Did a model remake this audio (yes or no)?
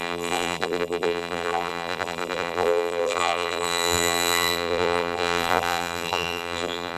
yes